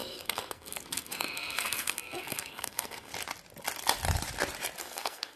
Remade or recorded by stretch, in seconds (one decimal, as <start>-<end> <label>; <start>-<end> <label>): 0.0-3.1 remade; 3.1-4.8 recorded; 4.8-5.4 remade